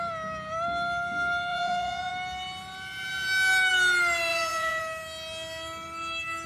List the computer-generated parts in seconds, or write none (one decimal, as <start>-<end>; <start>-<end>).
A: 1.5-2.1; 4.3-4.8